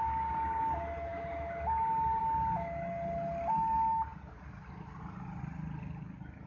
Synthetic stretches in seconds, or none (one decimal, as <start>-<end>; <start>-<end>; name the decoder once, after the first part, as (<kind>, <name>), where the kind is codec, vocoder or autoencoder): none

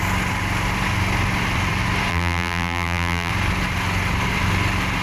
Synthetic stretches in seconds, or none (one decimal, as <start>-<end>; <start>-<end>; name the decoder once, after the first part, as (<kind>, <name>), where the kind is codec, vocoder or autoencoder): 2.1-3.3 (vocoder, BigVGAN v2)